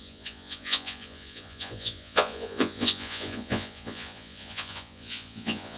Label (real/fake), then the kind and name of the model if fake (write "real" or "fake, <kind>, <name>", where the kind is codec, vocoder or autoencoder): fake, vocoder, Vocos